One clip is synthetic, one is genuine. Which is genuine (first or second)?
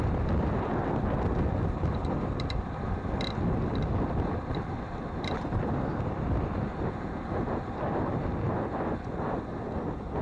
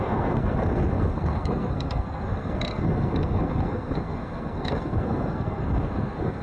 first